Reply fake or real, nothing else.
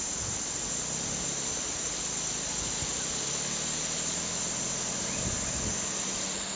real